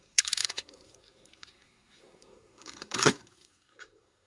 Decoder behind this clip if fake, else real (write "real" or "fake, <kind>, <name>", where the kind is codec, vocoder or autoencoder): fake, codec, SNAC